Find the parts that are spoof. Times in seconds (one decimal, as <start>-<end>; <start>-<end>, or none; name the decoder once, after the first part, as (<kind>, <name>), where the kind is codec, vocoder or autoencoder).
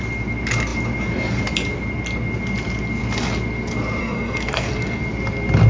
4.0-5.0 (codec, SNAC)